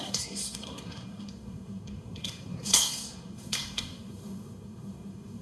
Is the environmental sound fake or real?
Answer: fake